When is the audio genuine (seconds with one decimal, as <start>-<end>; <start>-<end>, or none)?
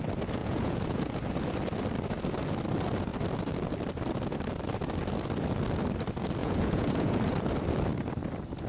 0.0-0.4; 1.2-6.4; 7.2-8.7